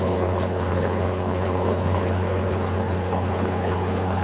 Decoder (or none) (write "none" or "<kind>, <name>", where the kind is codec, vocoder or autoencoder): codec, HILCodec